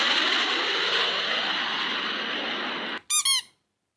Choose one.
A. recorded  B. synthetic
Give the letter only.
A